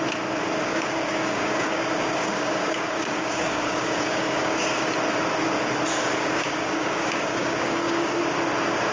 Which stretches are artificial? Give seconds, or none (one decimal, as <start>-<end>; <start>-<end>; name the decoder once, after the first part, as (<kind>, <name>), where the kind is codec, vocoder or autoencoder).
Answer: 0.7-4.9 (codec, DAC); 6.0-8.2